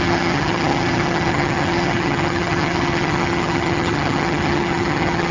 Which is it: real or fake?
fake